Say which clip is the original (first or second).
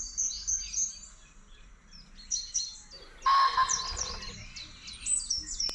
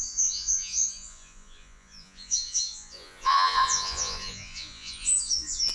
first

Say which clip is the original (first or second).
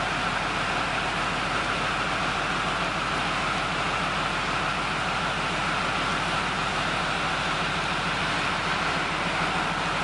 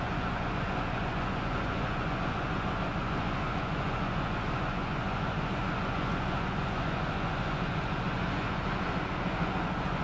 first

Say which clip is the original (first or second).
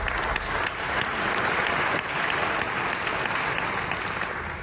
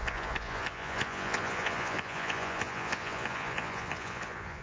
first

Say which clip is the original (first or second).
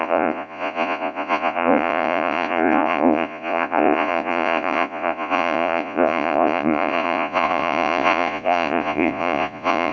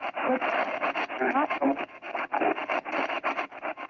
second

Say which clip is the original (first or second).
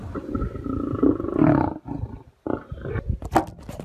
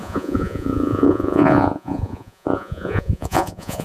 first